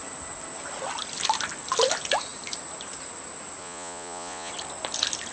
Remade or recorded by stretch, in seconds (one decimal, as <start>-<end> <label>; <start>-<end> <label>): 0.0-3.6 recorded; 3.6-4.5 remade; 4.5-5.3 recorded